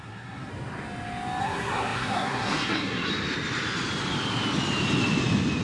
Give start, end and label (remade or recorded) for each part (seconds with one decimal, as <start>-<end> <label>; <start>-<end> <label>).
0.0-0.5 remade; 0.5-1.4 recorded; 1.4-3.1 remade; 3.1-5.6 recorded